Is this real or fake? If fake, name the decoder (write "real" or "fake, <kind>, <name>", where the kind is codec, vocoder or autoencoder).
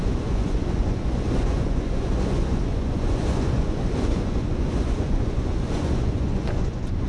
fake, vocoder, Vocos